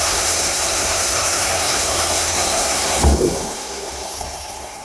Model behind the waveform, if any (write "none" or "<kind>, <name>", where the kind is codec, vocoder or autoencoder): codec, SNAC